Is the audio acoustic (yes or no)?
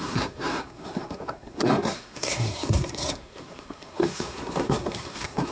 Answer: no